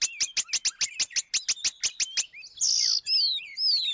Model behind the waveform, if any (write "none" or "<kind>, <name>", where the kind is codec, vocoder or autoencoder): none